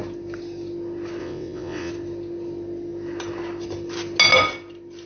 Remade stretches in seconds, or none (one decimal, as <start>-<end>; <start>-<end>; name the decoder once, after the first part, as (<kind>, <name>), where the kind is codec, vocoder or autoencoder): 1.2-1.9 (vocoder, WaveNeXt)